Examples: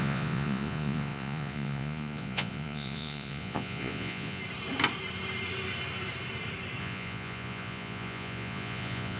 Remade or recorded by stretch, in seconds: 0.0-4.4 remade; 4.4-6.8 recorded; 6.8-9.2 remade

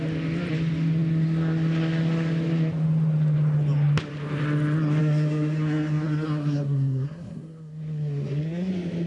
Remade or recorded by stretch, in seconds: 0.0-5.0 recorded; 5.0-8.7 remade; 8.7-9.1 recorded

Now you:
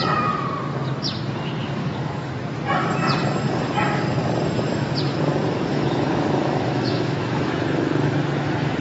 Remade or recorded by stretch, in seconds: 0.0-1.8 recorded; 1.8-2.3 remade; 2.3-5.7 recorded; 5.7-8.8 remade

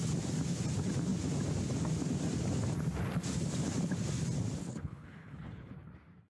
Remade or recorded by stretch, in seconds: 0.0-4.6 recorded; 4.6-5.7 remade; 5.7-6.4 recorded

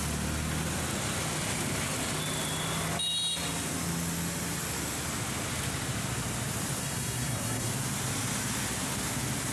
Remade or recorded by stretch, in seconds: 0.0-6.8 recorded; 6.8-7.7 remade; 7.7-9.5 recorded